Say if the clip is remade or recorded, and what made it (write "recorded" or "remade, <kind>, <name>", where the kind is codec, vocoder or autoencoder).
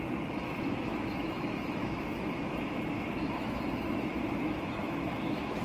remade, autoencoder, DAC-VAE